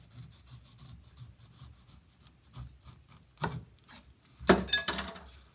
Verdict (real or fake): real